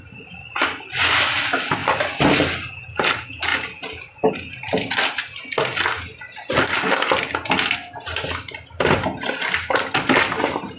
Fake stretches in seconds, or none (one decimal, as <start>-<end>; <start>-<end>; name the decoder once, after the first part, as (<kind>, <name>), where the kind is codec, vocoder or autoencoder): none

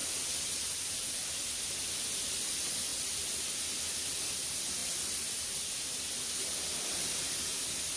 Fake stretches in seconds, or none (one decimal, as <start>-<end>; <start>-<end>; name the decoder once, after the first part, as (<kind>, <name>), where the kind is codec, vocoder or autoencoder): 0.0-1.5 (vocoder, BigVGAN v2); 2.9-3.4; 4.8-5.6

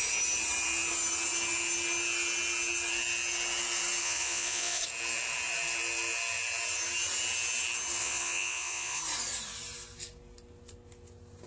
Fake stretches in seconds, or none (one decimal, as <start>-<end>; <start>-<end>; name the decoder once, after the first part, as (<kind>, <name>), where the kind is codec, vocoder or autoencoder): 4.0-4.8 (vocoder, Vocos); 8.0-9.0